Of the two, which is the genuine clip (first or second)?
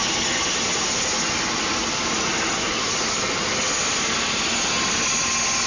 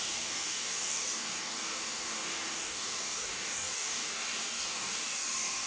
first